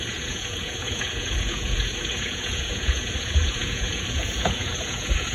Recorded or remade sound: remade